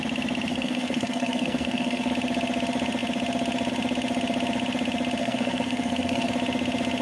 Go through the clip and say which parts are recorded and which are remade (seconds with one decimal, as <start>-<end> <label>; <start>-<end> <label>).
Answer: 0.0-0.5 recorded; 0.5-2.1 remade; 2.1-5.2 recorded; 5.2-6.3 remade; 6.3-7.0 recorded